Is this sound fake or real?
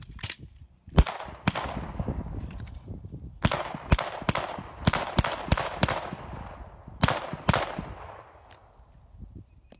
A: real